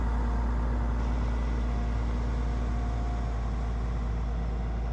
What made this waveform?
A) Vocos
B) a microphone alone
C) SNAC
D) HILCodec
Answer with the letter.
B